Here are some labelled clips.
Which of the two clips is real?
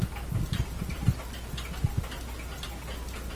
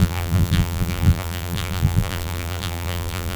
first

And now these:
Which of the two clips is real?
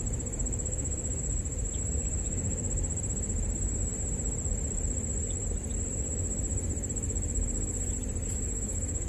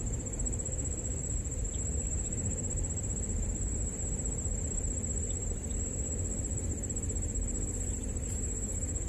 first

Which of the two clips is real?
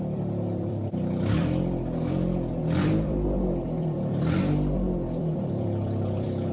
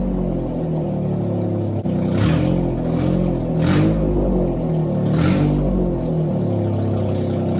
second